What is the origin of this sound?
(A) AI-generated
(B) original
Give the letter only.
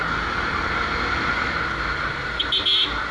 B